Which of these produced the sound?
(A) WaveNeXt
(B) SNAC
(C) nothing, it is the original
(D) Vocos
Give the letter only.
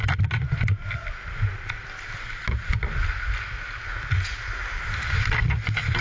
C